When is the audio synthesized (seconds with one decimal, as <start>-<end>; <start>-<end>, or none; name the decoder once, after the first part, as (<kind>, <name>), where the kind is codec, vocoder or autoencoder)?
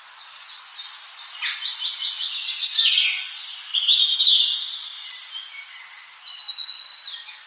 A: 3.7-7.0 (vocoder, BigVGAN v2)